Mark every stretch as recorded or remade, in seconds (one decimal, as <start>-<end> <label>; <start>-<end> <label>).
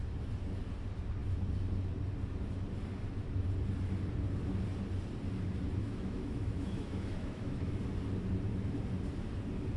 0.0-5.8 recorded; 5.8-7.7 remade; 7.7-9.8 recorded